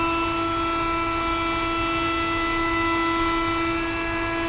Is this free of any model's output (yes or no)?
yes